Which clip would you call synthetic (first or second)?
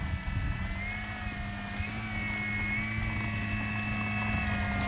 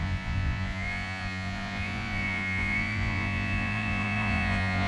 second